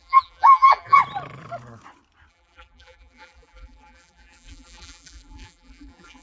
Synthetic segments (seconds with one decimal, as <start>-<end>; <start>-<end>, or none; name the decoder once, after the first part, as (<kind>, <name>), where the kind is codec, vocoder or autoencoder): 0.0-1.0 (vocoder, BigVGAN v2); 2.3-6.2